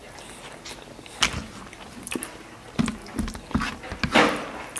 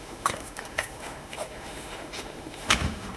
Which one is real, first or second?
first